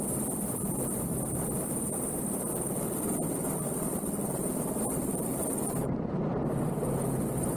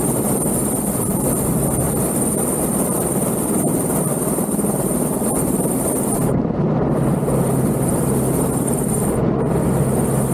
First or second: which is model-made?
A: first